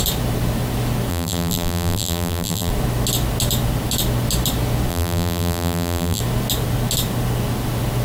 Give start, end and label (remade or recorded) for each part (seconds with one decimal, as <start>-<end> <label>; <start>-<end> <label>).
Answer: 0.0-1.1 recorded; 1.1-2.7 remade; 2.7-4.9 recorded; 4.9-6.2 remade; 6.2-8.0 recorded